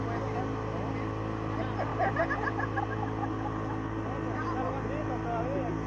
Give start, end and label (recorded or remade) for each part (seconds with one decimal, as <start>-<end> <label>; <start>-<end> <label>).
0.0-5.9 recorded